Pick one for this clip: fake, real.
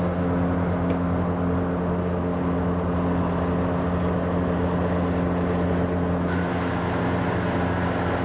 real